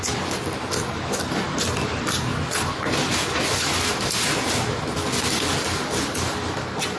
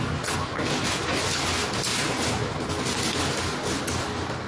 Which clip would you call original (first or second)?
second